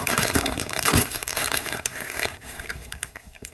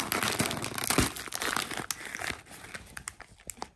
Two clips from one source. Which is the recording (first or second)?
second